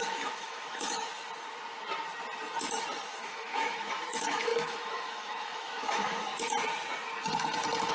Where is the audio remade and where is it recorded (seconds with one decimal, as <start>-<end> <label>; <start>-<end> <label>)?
0.0-1.1 remade; 1.1-3.2 recorded; 3.2-6.3 remade; 6.3-7.9 recorded